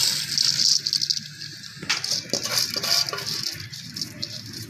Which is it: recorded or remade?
recorded